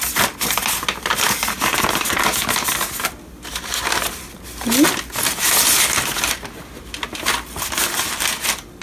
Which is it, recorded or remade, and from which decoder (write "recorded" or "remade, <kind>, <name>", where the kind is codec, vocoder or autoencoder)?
recorded